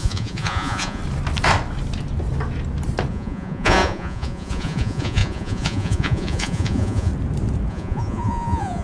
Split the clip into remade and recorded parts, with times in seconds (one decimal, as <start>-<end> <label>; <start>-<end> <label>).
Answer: 0.0-1.0 remade; 1.0-3.1 recorded; 3.1-7.1 remade; 7.1-7.7 recorded; 7.7-8.8 remade